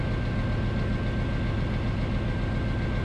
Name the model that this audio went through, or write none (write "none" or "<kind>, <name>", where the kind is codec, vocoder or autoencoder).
none